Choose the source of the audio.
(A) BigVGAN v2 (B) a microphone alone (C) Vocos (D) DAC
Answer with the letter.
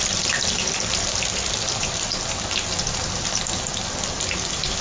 A